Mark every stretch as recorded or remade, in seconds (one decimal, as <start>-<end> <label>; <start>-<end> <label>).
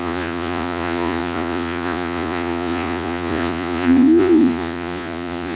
0.0-5.5 remade